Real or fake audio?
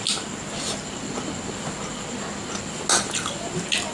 real